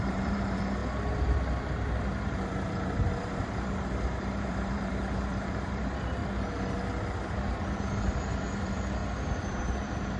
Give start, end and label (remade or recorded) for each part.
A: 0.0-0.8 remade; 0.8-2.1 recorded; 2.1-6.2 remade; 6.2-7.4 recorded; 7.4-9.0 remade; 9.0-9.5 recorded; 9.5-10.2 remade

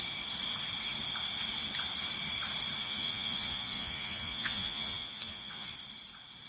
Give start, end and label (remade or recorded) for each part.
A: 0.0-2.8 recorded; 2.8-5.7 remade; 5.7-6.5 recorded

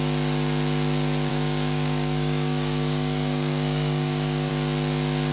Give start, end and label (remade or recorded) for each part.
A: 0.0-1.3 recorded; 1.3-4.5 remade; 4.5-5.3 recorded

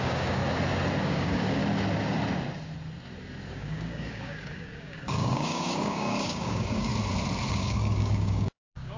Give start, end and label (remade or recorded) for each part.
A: 0.0-0.4 remade; 0.4-1.0 recorded; 1.0-1.6 remade; 1.6-3.5 recorded; 3.5-6.9 remade; 6.9-7.5 recorded; 7.5-9.0 remade

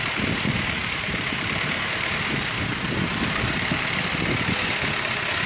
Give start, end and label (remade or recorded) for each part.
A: 0.0-0.8 recorded; 0.8-2.6 remade; 2.6-3.1 recorded; 3.1-4.1 remade; 4.1-5.5 recorded

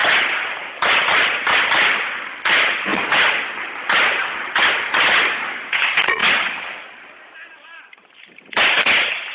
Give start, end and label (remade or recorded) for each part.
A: 0.0-9.3 recorded